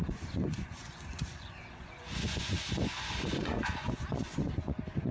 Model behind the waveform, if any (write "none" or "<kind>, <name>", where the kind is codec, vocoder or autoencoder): vocoder, Vocos